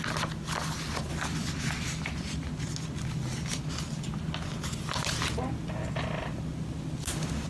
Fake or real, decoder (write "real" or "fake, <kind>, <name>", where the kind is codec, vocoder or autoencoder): real